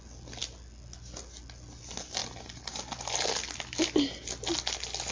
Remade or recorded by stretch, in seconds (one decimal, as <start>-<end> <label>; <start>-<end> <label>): 0.0-5.1 recorded